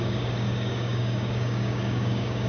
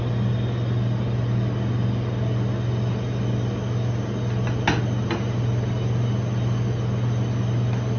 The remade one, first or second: first